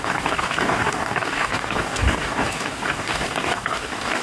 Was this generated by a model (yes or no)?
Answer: yes